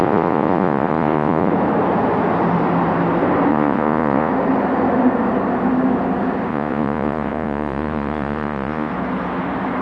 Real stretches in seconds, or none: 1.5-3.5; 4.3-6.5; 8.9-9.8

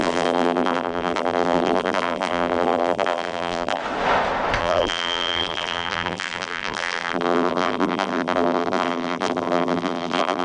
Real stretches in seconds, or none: 3.8-4.6